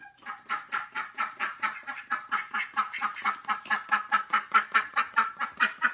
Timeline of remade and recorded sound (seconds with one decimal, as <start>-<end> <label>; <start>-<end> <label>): 0.0-3.4 remade; 3.4-4.1 recorded; 4.1-5.9 remade